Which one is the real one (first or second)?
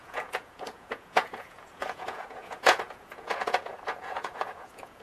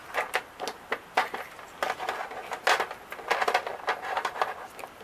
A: second